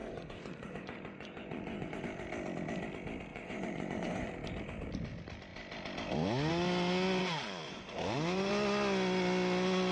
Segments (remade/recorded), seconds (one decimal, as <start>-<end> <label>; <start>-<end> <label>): 0.0-2.0 remade; 2.0-3.3 recorded; 3.3-4.3 remade; 4.3-7.2 recorded; 7.2-8.5 remade; 8.5-9.9 recorded